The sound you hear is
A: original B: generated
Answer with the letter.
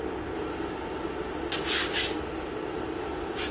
A